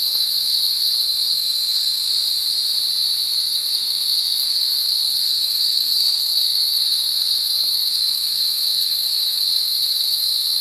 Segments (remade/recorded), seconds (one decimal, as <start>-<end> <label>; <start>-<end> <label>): 0.0-2.1 remade; 2.1-3.3 recorded; 3.3-10.6 remade